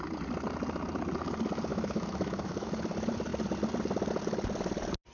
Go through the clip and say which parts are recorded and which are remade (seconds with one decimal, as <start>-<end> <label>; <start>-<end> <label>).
0.0-1.7 recorded; 1.7-2.7 remade; 2.7-5.1 recorded